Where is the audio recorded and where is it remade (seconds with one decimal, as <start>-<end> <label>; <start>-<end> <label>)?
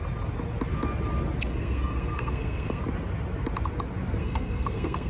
0.0-1.5 recorded; 1.5-2.8 remade; 2.8-4.2 recorded; 4.2-5.1 remade